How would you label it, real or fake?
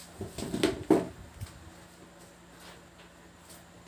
real